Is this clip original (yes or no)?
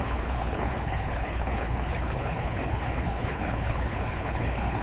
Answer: no